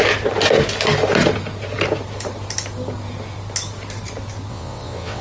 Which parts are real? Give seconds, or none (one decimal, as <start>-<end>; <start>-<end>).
0.0-4.5